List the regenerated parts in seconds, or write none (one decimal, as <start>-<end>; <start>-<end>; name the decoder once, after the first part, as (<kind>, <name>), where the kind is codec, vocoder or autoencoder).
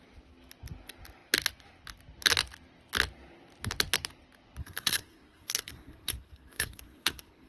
4.6-7.5 (codec, SNAC)